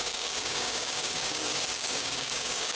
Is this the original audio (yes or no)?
no